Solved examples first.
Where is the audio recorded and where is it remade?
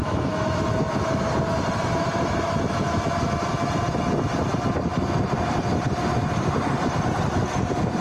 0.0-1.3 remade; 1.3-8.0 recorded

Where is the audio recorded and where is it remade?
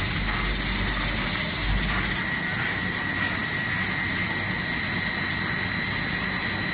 0.0-6.7 recorded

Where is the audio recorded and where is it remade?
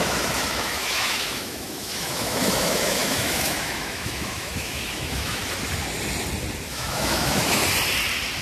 0.0-5.4 remade; 5.4-6.7 recorded; 6.7-7.6 remade; 7.6-8.4 recorded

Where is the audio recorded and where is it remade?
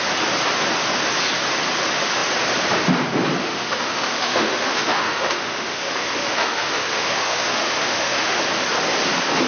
0.0-3.4 recorded; 3.4-8.4 remade; 8.4-9.5 recorded